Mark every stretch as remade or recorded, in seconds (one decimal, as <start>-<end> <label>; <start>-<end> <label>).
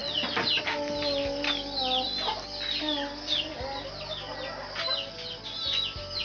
0.0-6.2 recorded